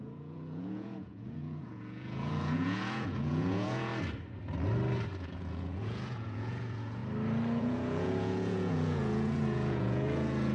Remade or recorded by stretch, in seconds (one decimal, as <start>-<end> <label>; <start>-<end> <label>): 0.0-3.9 remade; 3.9-5.2 recorded; 5.2-7.0 remade; 7.0-7.6 recorded; 7.6-10.5 remade